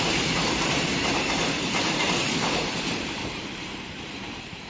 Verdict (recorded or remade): remade